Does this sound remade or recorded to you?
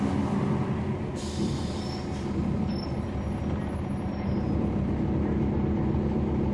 recorded